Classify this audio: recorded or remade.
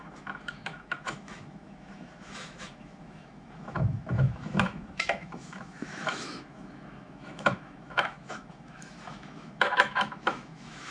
remade